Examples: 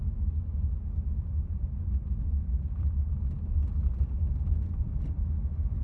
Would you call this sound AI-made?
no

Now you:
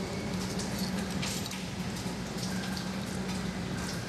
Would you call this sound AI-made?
no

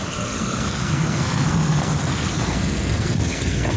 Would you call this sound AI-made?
yes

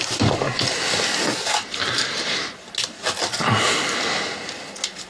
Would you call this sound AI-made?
no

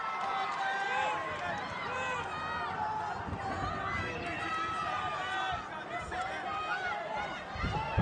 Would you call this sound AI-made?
no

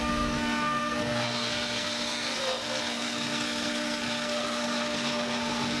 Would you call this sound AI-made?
yes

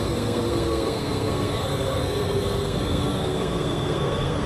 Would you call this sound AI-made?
yes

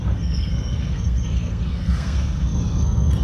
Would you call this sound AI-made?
yes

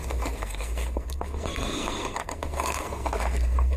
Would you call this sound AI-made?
yes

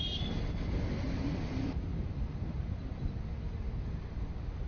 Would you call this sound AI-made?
no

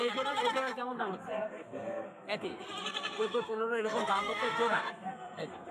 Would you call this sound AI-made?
yes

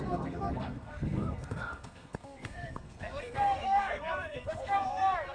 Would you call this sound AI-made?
yes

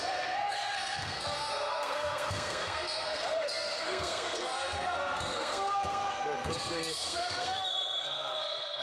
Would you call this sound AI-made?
yes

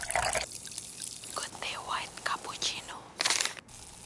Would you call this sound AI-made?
no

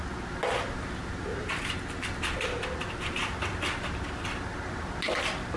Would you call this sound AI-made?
no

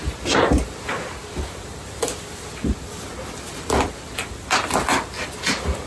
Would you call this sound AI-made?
no